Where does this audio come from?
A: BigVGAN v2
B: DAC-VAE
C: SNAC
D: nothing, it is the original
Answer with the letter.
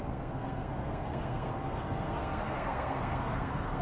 C